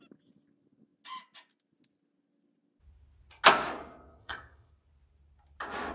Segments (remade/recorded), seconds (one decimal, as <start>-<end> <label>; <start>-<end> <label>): 0.0-4.2 recorded; 4.2-4.7 remade; 4.7-5.9 recorded